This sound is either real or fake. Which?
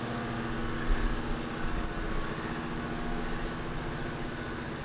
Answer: real